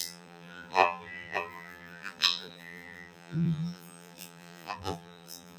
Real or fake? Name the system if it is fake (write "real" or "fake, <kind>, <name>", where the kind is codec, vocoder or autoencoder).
fake, vocoder, BigVGAN v2